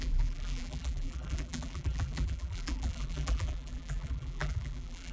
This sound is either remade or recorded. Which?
remade